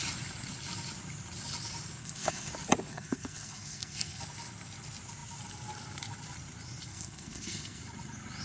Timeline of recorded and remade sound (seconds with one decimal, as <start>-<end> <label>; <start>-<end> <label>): 0.0-2.0 recorded; 2.0-2.5 remade; 2.5-2.9 recorded; 2.9-4.2 remade; 4.2-6.9 recorded; 6.9-7.8 remade; 7.8-8.4 recorded